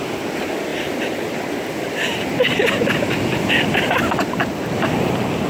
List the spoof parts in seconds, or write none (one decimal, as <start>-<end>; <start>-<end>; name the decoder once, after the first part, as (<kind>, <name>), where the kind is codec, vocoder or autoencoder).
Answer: none